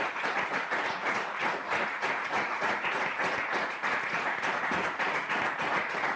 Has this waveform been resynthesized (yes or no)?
yes